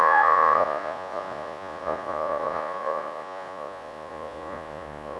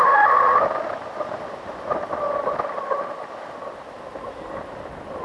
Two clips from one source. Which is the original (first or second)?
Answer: second